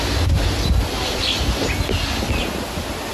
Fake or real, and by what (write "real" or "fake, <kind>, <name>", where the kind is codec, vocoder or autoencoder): real